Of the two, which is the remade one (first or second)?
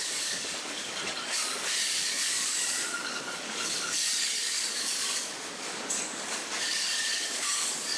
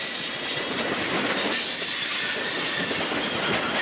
first